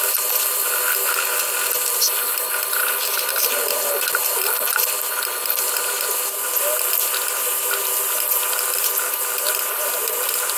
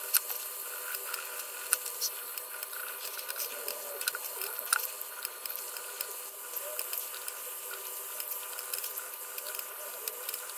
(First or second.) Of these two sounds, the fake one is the second